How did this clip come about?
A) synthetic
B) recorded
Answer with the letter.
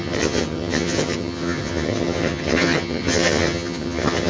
A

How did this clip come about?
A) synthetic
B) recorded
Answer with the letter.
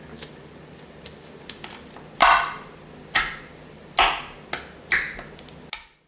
B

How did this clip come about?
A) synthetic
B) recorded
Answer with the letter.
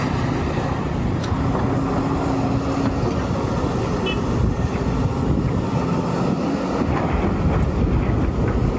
B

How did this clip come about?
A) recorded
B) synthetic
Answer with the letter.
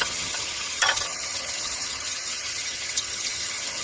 B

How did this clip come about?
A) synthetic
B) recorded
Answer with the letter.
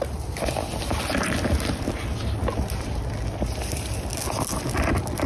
B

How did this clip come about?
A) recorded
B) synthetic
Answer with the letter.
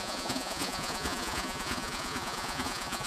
B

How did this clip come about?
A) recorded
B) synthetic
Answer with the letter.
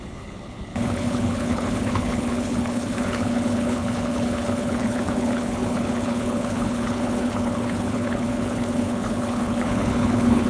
B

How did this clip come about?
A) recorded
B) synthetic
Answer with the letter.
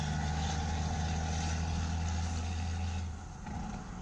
A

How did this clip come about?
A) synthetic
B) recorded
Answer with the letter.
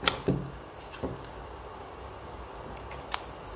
B